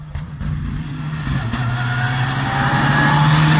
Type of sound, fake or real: real